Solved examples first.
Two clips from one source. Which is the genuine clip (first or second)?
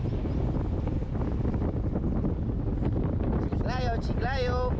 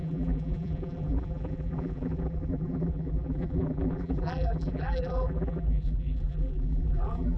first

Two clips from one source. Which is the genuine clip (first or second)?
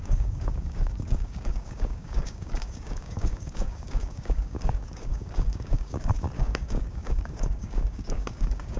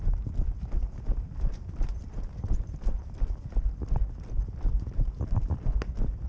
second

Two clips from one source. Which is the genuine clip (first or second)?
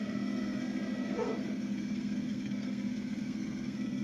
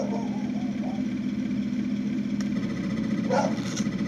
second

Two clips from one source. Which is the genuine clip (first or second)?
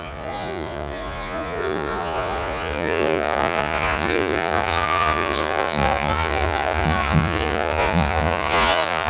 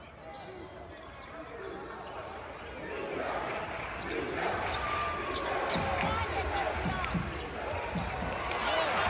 second